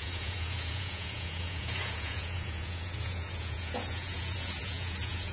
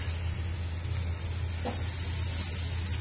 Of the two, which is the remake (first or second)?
first